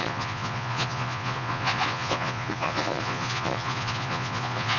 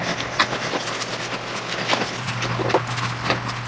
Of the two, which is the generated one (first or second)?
first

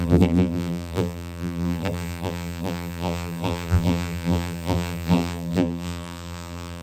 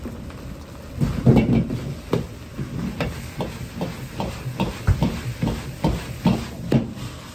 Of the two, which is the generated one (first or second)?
first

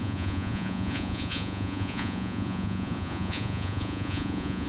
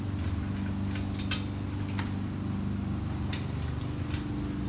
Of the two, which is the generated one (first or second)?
first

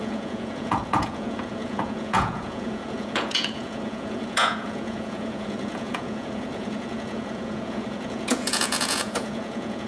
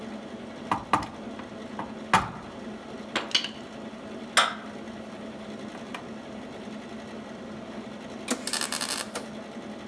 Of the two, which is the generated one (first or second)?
first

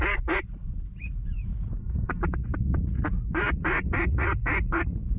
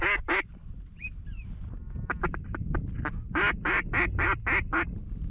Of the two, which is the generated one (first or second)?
first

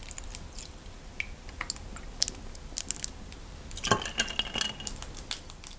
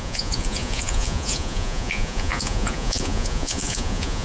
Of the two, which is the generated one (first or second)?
second